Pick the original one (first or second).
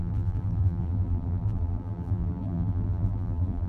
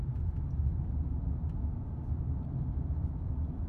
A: second